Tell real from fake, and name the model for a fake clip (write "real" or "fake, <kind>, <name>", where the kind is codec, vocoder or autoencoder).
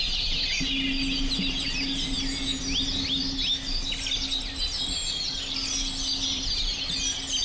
real